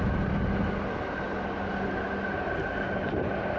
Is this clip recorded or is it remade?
recorded